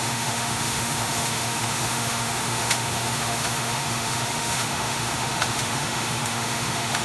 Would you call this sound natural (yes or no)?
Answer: no